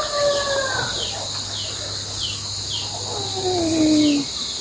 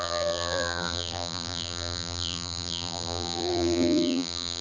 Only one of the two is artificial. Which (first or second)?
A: second